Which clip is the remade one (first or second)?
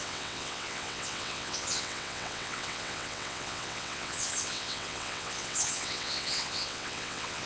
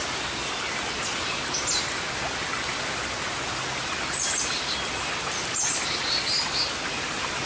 first